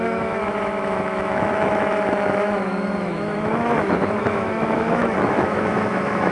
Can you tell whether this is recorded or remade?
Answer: remade